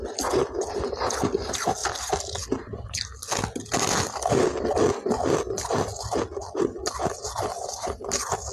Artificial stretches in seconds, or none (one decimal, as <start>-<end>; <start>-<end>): none